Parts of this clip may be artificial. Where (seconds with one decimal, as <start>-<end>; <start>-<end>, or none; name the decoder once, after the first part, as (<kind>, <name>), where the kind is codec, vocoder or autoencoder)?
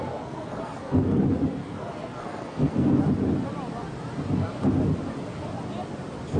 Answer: 0.0-1.2 (codec, SNAC); 1.6-3.0